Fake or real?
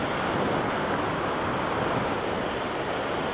real